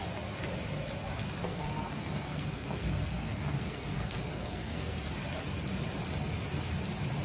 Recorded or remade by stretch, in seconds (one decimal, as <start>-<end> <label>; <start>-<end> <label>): 0.0-1.4 recorded; 1.4-5.0 remade; 5.0-7.2 recorded